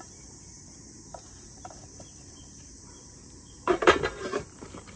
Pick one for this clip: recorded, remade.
remade